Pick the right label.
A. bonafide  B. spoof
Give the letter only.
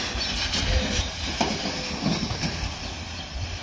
A